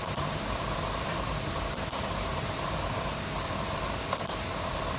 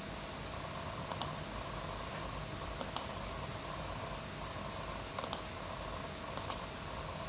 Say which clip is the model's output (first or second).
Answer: first